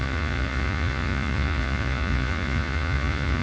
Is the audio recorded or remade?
remade